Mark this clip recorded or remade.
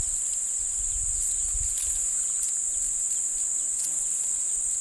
recorded